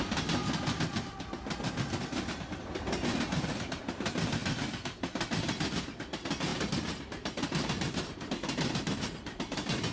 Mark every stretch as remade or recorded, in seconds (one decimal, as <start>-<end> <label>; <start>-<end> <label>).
0.0-9.9 recorded